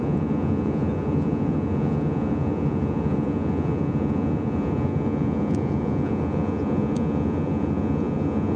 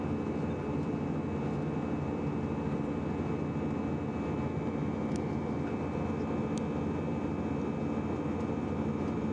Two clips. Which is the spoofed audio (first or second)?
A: first